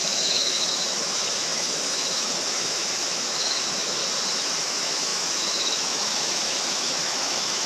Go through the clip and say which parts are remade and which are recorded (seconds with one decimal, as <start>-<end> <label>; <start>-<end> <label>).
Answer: 0.0-4.0 remade; 4.0-4.6 recorded; 4.6-7.7 remade